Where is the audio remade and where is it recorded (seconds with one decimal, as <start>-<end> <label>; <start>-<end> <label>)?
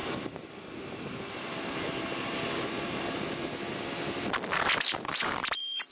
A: 0.0-3.5 remade; 3.5-4.9 recorded; 4.9-5.9 remade